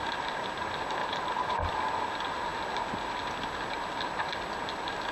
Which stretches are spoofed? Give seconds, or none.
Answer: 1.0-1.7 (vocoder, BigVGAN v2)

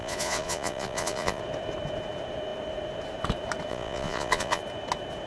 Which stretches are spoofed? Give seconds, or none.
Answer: 0.0-1.4 (vocoder, Vocos); 3.7-4.6

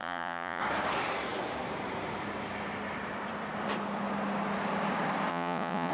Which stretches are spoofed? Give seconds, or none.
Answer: 0.0-0.6 (vocoder, Vocos); 5.3-5.9